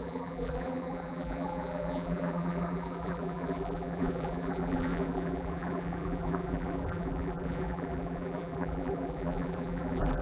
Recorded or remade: remade